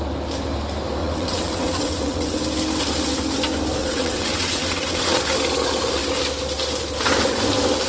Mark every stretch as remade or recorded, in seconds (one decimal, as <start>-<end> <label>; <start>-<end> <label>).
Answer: 0.0-1.0 recorded; 1.0-2.4 remade; 2.4-3.8 recorded; 3.8-5.2 remade; 5.2-7.9 recorded